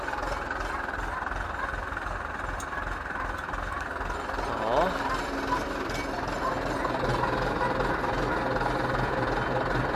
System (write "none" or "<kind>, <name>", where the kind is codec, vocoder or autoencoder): none